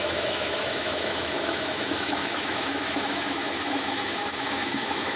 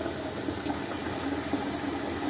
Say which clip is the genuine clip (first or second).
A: second